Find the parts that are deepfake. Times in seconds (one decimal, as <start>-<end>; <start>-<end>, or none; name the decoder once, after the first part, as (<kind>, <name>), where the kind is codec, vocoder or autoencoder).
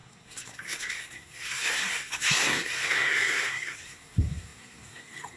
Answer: 0.0-5.4 (codec, SNAC)